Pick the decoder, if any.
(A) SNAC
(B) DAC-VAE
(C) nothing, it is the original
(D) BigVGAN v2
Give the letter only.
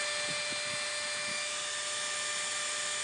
C